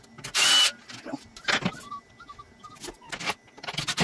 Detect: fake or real real